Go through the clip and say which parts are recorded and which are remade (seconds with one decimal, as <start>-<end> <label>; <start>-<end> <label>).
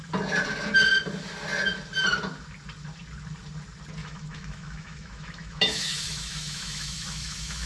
0.0-4.0 recorded; 4.0-7.7 remade